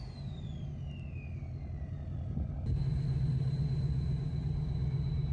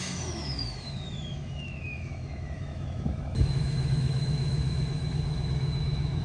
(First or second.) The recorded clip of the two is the first